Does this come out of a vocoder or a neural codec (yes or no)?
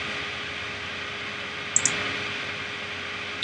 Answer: no